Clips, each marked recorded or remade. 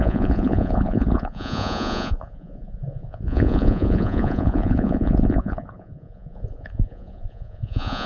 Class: remade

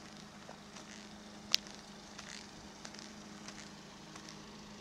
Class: recorded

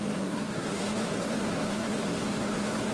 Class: remade